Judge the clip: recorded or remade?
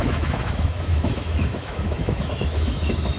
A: remade